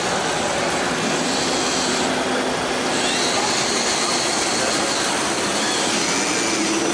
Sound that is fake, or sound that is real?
real